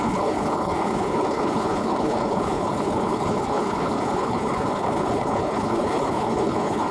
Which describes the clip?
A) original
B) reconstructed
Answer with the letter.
B